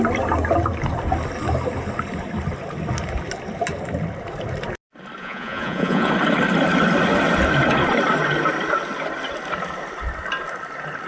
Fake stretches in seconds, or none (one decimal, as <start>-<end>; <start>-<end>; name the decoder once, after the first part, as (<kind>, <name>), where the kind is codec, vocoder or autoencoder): 5.2-6.1 (vocoder, Vocos)